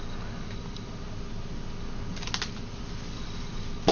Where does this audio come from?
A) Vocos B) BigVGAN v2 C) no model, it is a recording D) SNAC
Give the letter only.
C